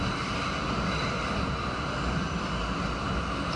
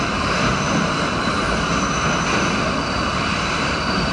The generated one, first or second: second